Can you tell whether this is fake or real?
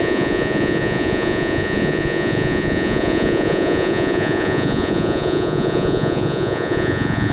fake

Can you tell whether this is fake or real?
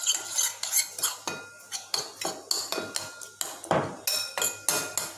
real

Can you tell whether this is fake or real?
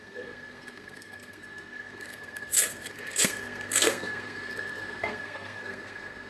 fake